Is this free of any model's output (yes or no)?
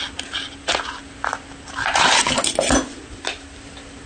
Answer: yes